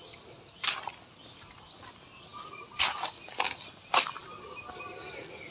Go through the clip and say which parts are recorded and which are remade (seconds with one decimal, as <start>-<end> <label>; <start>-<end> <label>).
0.0-5.5 recorded